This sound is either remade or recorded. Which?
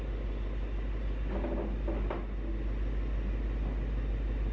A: recorded